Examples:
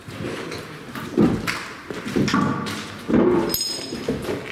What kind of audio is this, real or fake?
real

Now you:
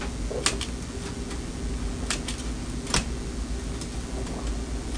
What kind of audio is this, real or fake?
real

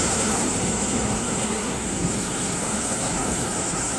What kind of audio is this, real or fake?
fake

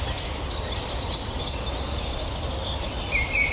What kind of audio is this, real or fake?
real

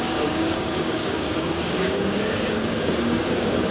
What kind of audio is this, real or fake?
fake